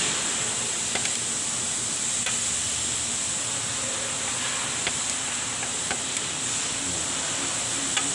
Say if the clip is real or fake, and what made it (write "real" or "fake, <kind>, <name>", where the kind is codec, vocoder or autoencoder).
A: real